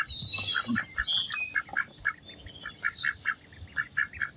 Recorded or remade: recorded